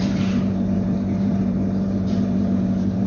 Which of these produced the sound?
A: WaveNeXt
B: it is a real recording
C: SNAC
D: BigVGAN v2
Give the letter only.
D